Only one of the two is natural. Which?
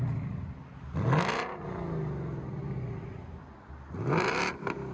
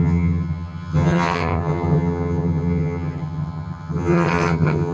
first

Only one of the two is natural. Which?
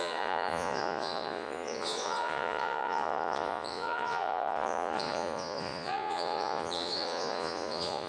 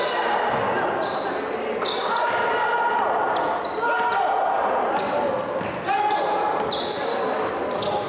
second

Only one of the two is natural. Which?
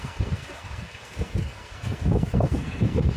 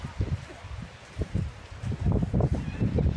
second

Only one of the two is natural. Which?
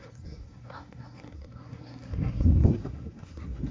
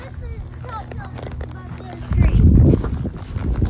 second